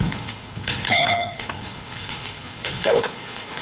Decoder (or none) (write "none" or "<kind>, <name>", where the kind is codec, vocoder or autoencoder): codec, HILCodec